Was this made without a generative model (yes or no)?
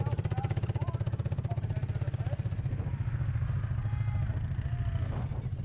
yes